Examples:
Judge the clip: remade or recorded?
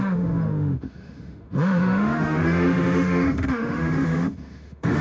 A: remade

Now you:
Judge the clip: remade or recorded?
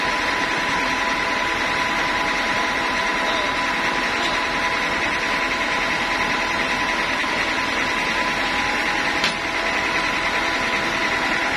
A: recorded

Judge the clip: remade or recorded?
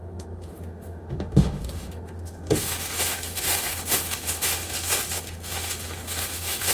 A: remade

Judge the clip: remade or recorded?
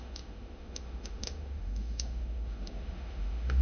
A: remade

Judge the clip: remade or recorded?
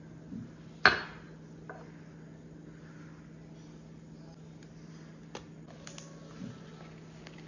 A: recorded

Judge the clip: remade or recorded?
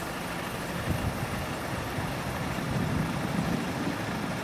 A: recorded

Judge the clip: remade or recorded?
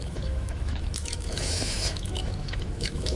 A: remade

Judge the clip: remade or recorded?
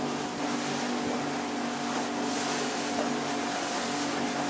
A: recorded